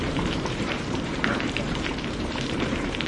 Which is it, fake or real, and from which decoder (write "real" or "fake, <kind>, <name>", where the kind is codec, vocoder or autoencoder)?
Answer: fake, vocoder, BigVGAN v2